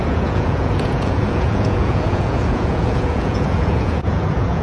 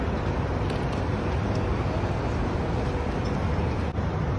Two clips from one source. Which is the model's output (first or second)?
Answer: first